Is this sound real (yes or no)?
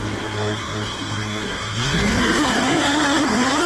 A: no